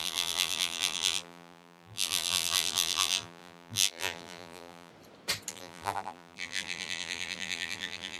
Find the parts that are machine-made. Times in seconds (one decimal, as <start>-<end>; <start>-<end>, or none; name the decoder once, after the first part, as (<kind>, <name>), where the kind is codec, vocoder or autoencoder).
0.0-4.9 (vocoder, BigVGAN v2); 5.5-8.2